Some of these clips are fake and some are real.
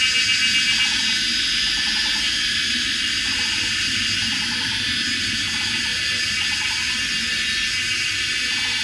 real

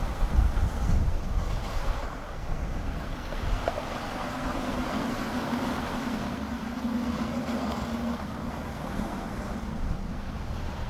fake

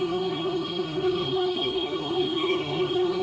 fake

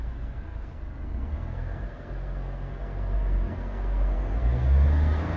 fake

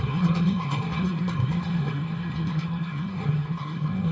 fake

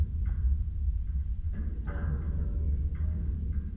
real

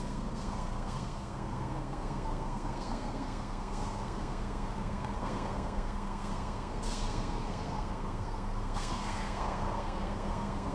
fake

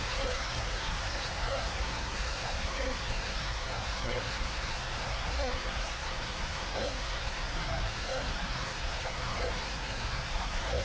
fake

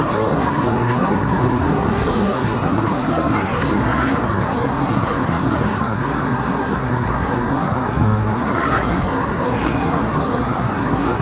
fake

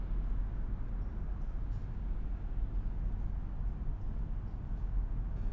real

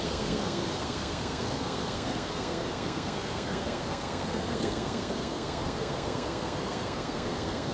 fake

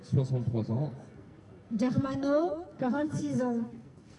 fake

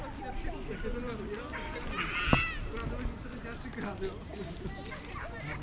real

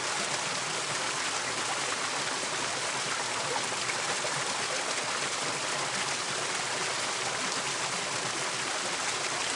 real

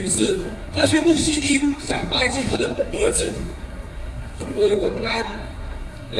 fake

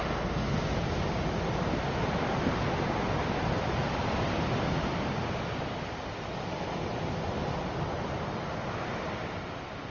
real